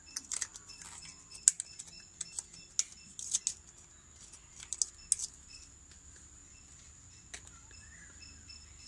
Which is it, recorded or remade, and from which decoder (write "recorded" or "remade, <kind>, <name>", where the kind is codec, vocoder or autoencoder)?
recorded